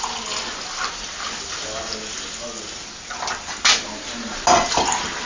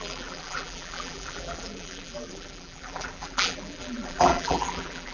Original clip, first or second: first